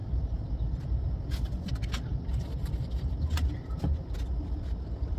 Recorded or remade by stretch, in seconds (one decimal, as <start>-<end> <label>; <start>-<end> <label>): 0.0-5.2 recorded